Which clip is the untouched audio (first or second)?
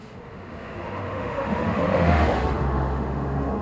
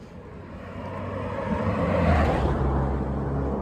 second